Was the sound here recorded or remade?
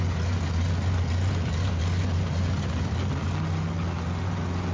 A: recorded